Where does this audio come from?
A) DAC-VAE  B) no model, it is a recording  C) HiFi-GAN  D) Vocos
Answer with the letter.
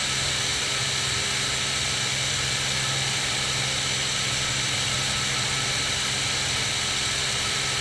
B